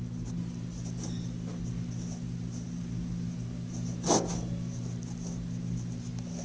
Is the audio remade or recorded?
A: recorded